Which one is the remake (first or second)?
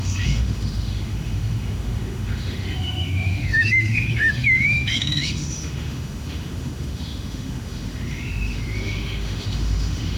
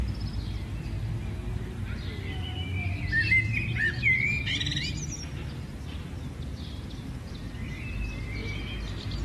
first